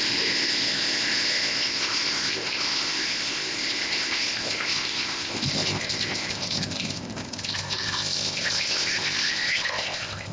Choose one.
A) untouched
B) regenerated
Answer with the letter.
B